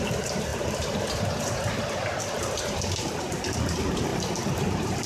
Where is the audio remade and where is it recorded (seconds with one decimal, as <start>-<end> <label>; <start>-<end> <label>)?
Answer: 0.0-4.1 remade; 4.1-5.1 recorded